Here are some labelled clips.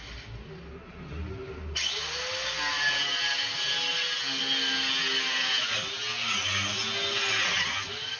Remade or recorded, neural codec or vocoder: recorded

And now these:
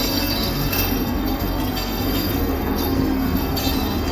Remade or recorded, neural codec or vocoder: remade, codec, SNAC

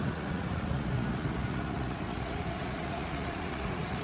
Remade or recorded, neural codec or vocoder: remade, vocoder, Vocos